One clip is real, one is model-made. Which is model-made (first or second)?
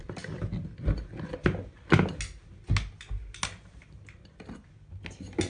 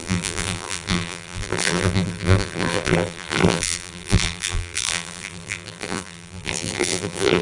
second